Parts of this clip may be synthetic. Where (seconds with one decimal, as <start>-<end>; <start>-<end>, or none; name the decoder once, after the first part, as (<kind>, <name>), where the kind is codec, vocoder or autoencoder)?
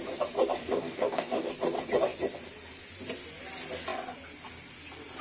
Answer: 0.6-1.5 (codec, DAC)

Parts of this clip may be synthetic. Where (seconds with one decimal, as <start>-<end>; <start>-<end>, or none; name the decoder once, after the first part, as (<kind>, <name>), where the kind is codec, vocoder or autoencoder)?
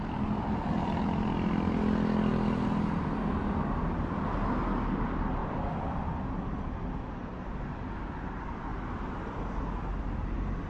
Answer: none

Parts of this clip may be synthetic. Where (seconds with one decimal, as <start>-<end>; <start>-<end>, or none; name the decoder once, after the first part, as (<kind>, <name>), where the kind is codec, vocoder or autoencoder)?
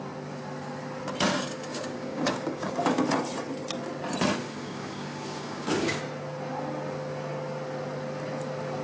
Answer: 1.7-2.7 (codec, DAC); 4.4-6.0